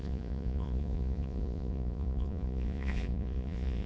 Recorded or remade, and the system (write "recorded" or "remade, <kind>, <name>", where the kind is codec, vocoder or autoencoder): remade, vocoder, Vocos